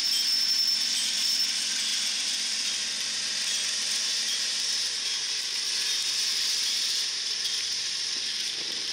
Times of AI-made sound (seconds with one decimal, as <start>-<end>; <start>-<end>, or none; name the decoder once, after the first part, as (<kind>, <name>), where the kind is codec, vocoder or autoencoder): 5.2-5.7 (vocoder, BigVGAN v2)